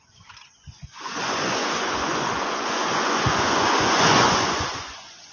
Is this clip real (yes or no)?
no